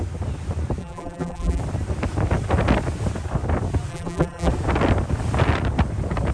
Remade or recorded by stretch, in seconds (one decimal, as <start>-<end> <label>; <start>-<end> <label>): 0.0-0.8 recorded; 0.8-1.6 remade; 1.6-3.9 recorded; 3.9-4.5 remade; 4.5-6.3 recorded